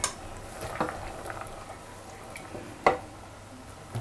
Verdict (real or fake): real